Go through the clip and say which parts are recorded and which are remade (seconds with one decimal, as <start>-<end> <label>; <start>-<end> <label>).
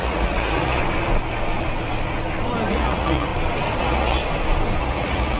0.0-0.8 remade; 0.8-2.7 recorded; 2.7-3.3 remade; 3.3-3.8 recorded; 3.8-4.2 remade; 4.2-4.8 recorded; 4.8-5.4 remade